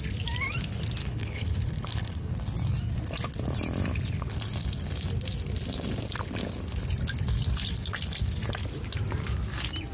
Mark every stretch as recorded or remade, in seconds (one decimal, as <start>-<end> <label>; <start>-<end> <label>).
0.0-1.0 recorded; 1.0-2.3 remade; 2.3-9.9 recorded